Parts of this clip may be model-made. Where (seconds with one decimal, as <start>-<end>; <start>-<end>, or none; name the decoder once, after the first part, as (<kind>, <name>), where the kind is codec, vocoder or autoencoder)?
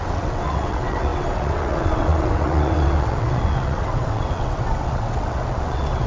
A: 0.0-6.1 (vocoder, WaveNeXt)